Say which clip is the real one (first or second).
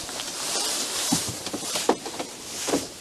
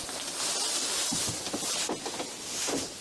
second